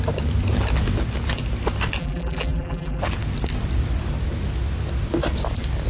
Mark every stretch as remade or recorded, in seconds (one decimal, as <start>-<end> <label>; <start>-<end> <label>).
0.0-2.0 recorded; 2.0-3.0 remade; 3.0-5.9 recorded